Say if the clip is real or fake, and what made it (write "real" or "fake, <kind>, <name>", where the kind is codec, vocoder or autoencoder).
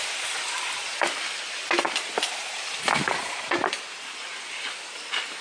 real